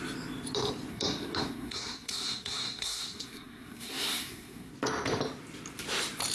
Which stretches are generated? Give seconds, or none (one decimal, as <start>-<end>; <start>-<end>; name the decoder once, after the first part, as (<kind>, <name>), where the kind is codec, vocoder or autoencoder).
0.9-4.7 (codec, SNAC)

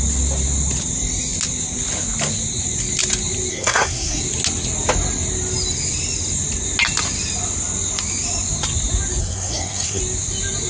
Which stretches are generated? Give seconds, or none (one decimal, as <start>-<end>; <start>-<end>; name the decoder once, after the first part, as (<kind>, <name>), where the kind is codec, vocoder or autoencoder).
3.5-4.2 (codec, SNAC); 9.2-10.0

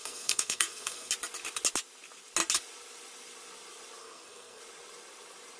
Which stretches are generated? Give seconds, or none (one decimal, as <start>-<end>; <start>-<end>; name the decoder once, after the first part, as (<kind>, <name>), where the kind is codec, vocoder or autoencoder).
0.0-1.1 (codec, SNAC); 4.0-4.6

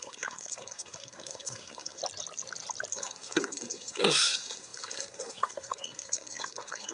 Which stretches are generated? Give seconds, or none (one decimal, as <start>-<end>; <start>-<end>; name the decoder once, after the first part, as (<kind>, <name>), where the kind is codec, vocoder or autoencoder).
0.0-2.0 (codec, SNAC); 2.9-6.9

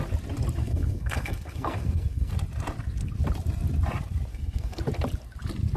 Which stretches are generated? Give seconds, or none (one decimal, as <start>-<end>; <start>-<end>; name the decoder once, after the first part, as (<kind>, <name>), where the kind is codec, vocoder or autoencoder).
0.6-2.3 (codec, SNAC); 4.3-4.8

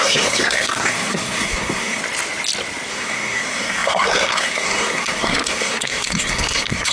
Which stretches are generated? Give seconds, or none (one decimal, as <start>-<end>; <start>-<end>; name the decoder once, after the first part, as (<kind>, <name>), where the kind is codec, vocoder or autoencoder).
0.0-2.0 (codec, SNAC); 2.9-6.9